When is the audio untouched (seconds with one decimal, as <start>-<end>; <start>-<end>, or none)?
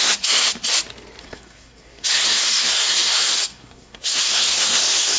0.5-1.2